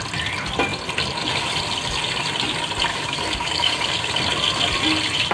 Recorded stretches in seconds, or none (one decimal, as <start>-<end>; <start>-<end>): 0.0-2.9; 4.1-5.3